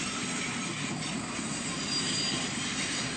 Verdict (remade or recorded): recorded